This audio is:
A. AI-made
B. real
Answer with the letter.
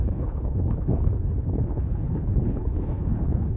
A